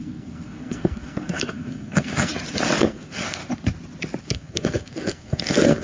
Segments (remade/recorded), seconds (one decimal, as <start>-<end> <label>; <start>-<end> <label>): 0.0-2.3 remade; 2.3-2.8 recorded; 2.8-3.4 remade; 3.4-4.2 recorded; 4.2-5.8 remade